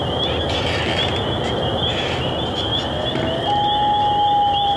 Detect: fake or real real